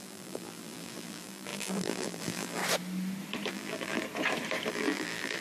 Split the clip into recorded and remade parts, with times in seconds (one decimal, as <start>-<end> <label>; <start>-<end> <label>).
0.0-2.6 remade; 2.6-3.5 recorded; 3.5-4.0 remade; 4.0-4.7 recorded; 4.7-5.4 remade